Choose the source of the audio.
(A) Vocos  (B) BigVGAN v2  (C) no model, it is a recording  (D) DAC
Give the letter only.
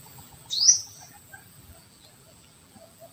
B